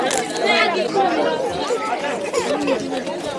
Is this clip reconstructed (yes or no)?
no